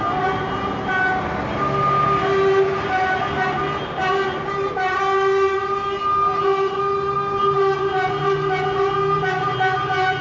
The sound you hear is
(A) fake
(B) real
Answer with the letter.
B